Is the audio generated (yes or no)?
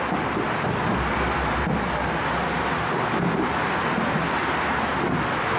no